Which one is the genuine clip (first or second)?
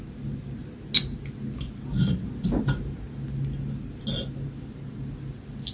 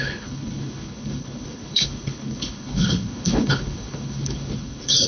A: first